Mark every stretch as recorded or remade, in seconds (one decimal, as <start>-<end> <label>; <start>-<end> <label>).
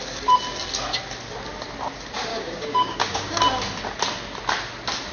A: 0.0-2.3 recorded; 2.3-3.4 remade; 3.4-5.1 recorded